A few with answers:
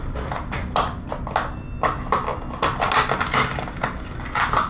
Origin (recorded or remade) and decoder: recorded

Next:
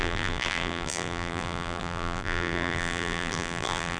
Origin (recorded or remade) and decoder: remade, vocoder, BigVGAN v2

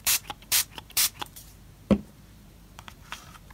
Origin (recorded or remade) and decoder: remade, vocoder, BigVGAN v2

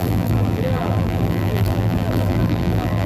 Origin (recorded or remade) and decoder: remade, vocoder, BigVGAN v2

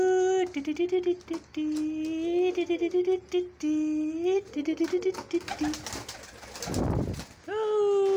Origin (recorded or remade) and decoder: recorded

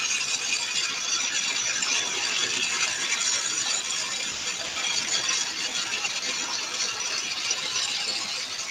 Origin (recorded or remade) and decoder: remade, vocoder, BigVGAN v2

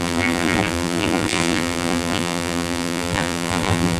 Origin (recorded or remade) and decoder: remade, vocoder, BigVGAN v2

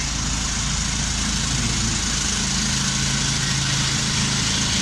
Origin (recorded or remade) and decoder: recorded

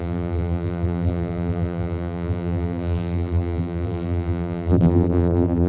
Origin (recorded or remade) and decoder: remade, vocoder, BigVGAN v2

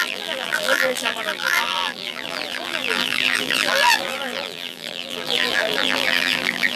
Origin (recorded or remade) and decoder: remade, vocoder, BigVGAN v2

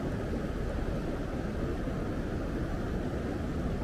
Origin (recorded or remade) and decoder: recorded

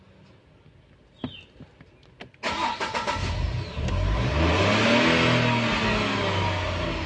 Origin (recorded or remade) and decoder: recorded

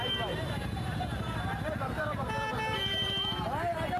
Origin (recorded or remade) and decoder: remade, vocoder, BigVGAN v2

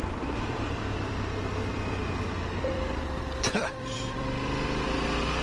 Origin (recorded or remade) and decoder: remade, vocoder, BigVGAN v2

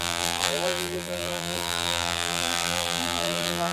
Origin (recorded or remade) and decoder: remade, vocoder, BigVGAN v2